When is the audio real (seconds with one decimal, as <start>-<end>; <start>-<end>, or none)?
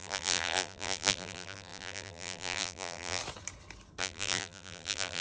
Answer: 3.2-4.0